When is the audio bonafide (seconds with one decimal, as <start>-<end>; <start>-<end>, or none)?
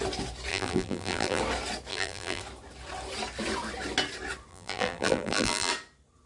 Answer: 0.0-0.5; 1.4-1.9; 2.4-4.5; 5.7-6.3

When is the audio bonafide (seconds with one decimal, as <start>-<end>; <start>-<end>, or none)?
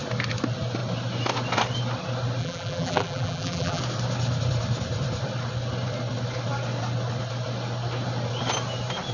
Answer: 0.0-2.4; 3.8-9.1